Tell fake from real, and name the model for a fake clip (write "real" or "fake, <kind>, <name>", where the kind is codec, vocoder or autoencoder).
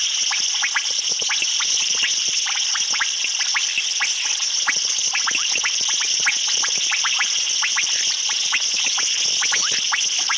real